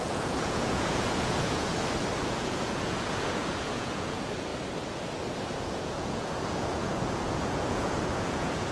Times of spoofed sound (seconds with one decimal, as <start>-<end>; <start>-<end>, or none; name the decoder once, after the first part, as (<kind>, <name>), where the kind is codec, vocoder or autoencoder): 0.0-1.7 (vocoder, Vocos); 2.3-4.5; 5.5-8.7